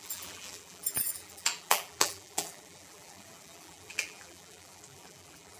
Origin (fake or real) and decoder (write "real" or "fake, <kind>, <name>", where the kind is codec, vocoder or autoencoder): fake, vocoder, BigVGAN v2